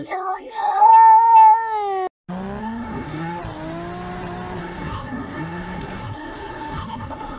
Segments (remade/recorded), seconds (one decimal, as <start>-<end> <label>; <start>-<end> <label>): 0.0-0.9 remade; 0.9-2.6 recorded; 2.6-3.4 remade; 3.4-4.6 recorded; 4.6-7.4 remade